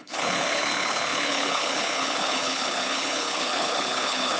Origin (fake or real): fake